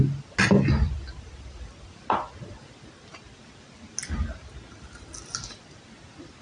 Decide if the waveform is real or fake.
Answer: real